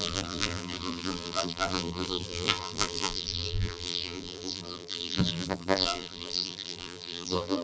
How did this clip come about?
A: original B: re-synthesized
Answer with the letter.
B